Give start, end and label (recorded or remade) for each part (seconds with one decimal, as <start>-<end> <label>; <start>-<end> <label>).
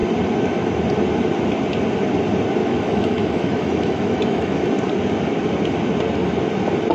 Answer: 0.0-2.6 recorded; 2.6-4.6 remade; 4.6-6.9 recorded